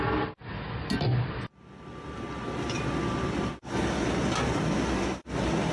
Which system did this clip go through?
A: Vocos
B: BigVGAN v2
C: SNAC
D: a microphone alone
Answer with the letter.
D